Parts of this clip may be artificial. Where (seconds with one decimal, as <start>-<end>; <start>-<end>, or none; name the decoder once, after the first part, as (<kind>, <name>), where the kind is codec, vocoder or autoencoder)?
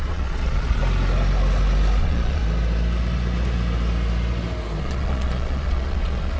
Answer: 0.0-0.8 (vocoder, Vocos); 2.0-2.4; 4.8-6.4